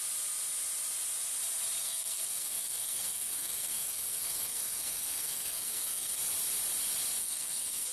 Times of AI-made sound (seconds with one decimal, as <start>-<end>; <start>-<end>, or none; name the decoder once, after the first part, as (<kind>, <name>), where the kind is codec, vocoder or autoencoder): 1.8-6.2 (codec, SNAC); 7.2-7.9